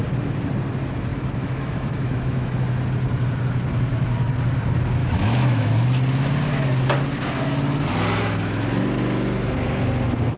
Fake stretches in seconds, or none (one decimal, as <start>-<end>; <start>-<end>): 1.1-2.6; 5.0-5.7